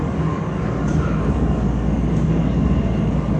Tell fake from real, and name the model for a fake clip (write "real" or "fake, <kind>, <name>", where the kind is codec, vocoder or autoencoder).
fake, codec, DAC